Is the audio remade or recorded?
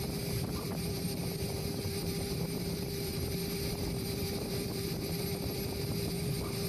remade